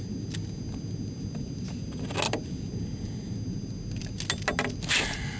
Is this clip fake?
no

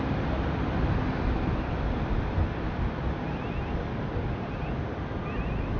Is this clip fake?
no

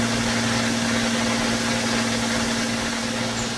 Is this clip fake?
no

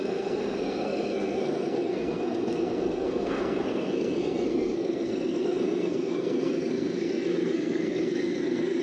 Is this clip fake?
yes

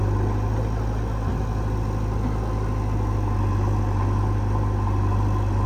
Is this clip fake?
no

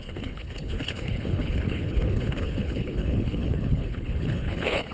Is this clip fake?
yes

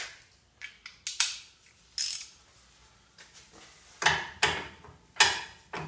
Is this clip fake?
no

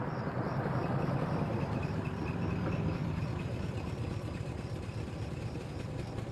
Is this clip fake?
yes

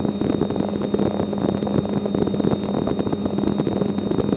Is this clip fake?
no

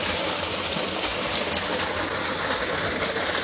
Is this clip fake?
no